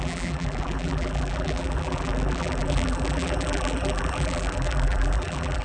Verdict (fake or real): fake